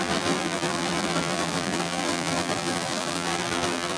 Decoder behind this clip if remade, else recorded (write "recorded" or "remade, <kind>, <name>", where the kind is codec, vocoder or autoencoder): remade, vocoder, BigVGAN v2